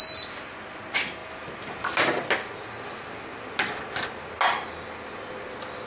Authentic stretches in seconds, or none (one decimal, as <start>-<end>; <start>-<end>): 0.0-5.9